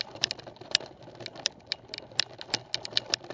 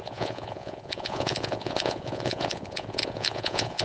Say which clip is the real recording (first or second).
first